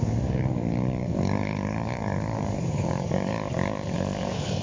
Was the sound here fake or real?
fake